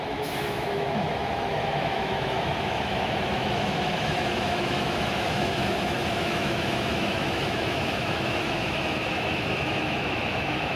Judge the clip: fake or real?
fake